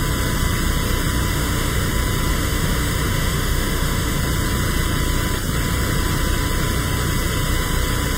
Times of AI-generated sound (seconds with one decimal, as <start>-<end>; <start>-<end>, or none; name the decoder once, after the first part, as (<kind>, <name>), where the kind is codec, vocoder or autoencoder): 1.3-1.9 (autoencoder, DAC-VAE); 2.3-4.2